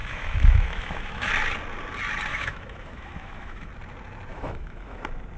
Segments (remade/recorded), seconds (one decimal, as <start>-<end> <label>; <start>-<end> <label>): 0.0-1.3 remade; 1.3-2.3 recorded; 2.3-3.7 remade; 3.7-4.3 recorded; 4.3-5.0 remade; 5.0-5.4 recorded